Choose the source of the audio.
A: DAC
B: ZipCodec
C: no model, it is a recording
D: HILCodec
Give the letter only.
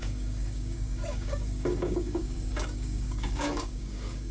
A